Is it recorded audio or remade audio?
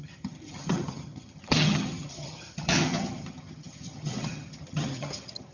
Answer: remade